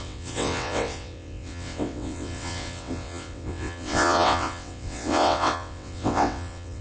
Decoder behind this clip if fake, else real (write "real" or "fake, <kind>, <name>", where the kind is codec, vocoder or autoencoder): fake, vocoder, WaveNeXt